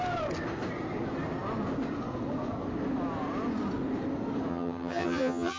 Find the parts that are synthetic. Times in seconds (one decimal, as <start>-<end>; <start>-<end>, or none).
4.5-5.6